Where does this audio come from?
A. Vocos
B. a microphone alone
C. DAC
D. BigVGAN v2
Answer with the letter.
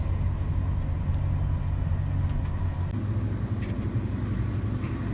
B